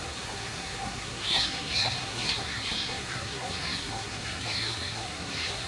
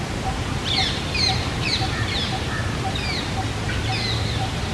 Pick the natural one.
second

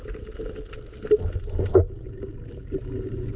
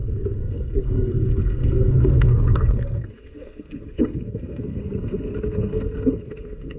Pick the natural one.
first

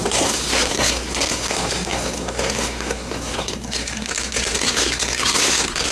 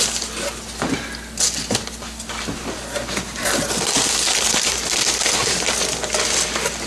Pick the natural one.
second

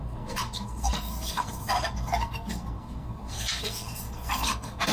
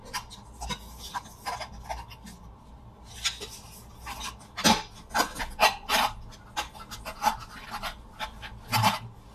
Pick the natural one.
second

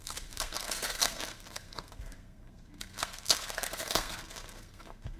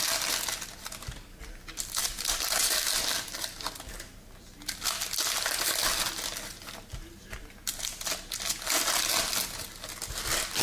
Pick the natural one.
second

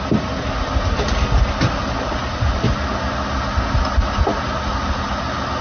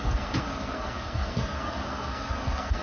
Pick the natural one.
first